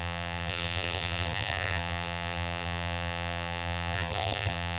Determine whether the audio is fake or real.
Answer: fake